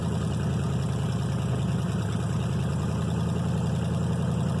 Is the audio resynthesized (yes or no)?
no